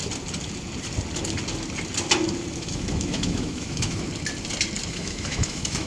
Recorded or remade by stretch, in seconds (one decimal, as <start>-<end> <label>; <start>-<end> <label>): 0.0-2.5 recorded; 2.5-4.1 remade; 4.1-4.9 recorded; 4.9-5.9 remade